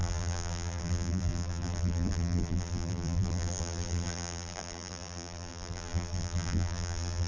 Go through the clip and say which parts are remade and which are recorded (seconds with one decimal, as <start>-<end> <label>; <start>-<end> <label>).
0.0-7.3 remade